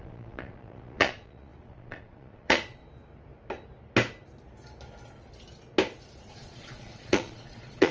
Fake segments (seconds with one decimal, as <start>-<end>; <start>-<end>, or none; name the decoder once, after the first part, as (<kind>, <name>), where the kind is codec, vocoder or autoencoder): 0.0-2.8 (vocoder, Vocos); 6.3-7.9

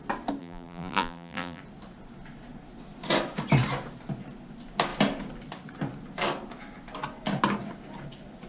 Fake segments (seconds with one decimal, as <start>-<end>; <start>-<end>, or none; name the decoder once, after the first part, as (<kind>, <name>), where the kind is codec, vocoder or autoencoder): 0.4-1.6 (vocoder, BigVGAN v2)

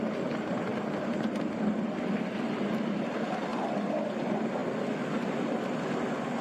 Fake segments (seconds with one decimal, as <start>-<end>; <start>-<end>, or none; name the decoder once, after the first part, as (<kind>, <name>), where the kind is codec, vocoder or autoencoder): none